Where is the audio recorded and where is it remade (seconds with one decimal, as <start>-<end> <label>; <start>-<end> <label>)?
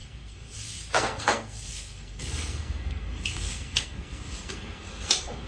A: 0.0-5.5 remade